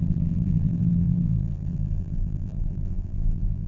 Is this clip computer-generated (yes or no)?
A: yes